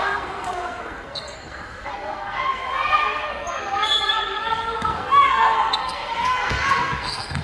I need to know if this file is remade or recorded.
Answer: remade